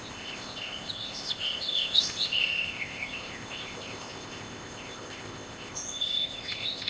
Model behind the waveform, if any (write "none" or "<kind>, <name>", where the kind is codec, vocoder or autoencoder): codec, ZipCodec